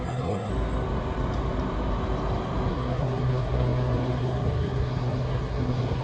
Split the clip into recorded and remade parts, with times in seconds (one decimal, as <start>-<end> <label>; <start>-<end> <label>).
0.0-0.5 remade; 0.5-2.7 recorded; 2.7-6.0 remade